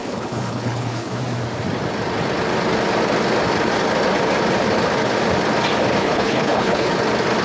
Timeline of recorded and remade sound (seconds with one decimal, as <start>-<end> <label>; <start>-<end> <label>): 0.0-1.2 remade; 1.2-6.0 recorded; 6.0-6.9 remade; 6.9-7.4 recorded